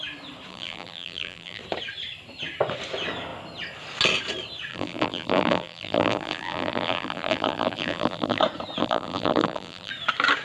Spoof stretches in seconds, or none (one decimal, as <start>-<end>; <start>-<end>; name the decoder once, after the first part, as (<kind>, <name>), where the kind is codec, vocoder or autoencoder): 0.5-1.6 (vocoder, BigVGAN v2); 4.7-8.4; 8.8-9.9